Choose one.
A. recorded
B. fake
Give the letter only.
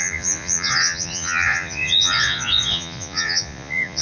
B